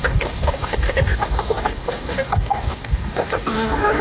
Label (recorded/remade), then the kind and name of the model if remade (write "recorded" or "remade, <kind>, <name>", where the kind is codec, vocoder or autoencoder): remade, codec, DAC